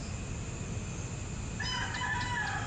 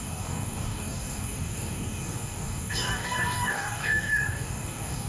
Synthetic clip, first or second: second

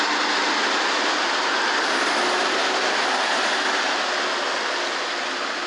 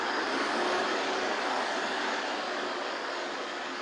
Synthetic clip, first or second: second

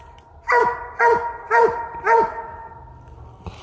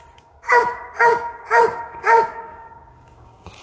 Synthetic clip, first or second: second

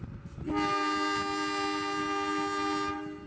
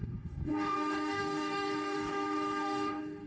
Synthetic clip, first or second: second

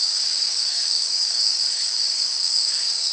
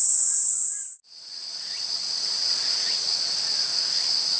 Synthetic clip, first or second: first